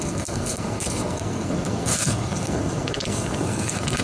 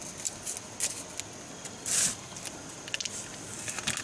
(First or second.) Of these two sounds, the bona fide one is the second